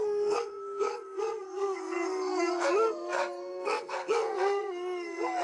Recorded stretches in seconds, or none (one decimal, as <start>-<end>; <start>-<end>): none